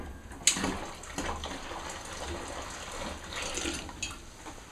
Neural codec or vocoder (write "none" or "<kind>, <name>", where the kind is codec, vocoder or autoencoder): none